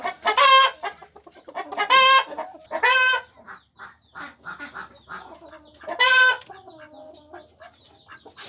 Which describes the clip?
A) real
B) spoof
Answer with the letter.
A